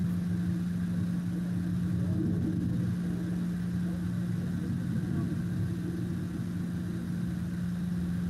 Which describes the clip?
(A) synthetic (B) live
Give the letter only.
B